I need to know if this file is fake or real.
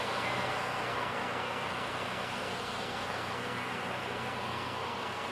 fake